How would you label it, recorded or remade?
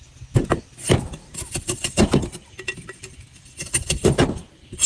recorded